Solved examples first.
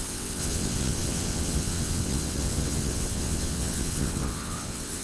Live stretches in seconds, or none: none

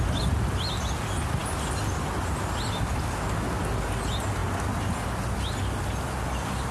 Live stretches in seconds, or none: 0.0-6.7

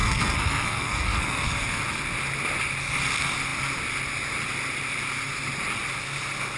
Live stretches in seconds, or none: 1.8-6.6

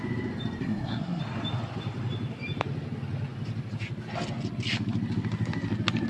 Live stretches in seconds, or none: 0.0-0.6; 1.2-6.1

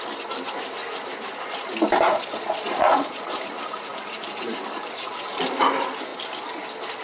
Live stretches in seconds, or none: 0.0-2.1; 3.5-7.0

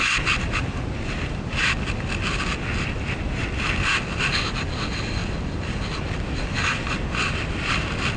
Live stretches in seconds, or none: 0.0-8.2

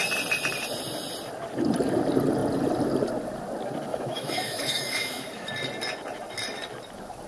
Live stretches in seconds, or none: 0.0-3.9; 5.5-7.3

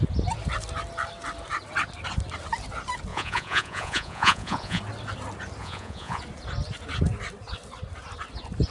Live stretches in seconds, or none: 0.0-3.1; 4.8-5.6; 6.2-8.7